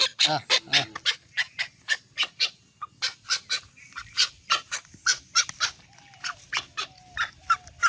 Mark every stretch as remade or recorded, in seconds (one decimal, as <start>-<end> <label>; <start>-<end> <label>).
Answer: 0.0-7.9 recorded